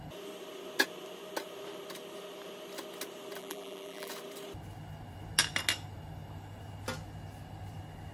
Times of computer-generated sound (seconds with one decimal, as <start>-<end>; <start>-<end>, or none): 3.4-4.1